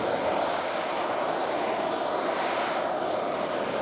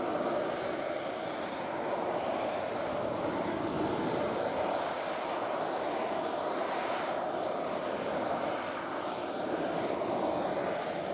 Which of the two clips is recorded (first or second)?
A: first